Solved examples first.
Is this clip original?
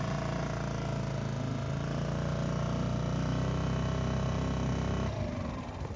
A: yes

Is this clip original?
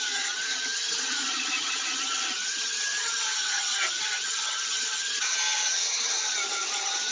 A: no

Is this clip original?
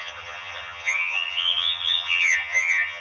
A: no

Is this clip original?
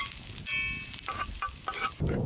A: yes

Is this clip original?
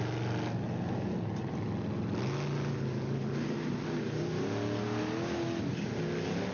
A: yes